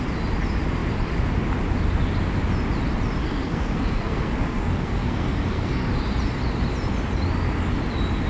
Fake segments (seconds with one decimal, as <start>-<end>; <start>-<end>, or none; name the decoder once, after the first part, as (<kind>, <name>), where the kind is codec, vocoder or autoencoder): 3.2-5.9 (codec, SNAC)